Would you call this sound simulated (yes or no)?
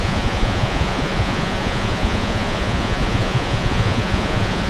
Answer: yes